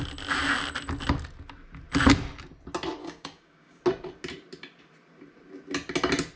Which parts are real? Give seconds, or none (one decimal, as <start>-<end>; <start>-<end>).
0.0-3.0; 3.8-6.4